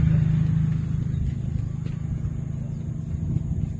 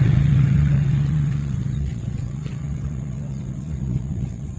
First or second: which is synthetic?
second